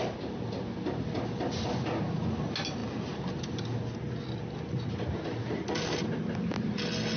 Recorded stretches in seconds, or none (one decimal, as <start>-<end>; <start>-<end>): 0.0-7.2

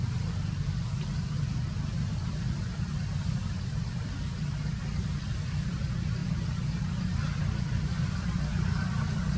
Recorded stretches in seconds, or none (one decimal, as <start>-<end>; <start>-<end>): 0.0-9.4

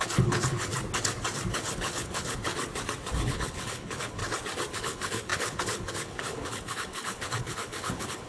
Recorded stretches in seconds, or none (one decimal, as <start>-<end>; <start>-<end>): 0.7-1.5; 2.5-3.2; 4.2-4.7

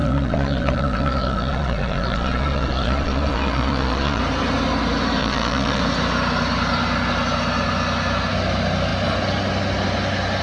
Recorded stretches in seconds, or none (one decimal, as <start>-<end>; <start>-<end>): 4.2-5.2; 5.8-10.4